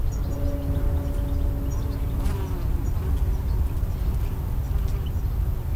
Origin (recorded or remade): recorded